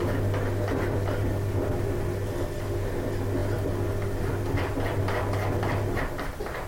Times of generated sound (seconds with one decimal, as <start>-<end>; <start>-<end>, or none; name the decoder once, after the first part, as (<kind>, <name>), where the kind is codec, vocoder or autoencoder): none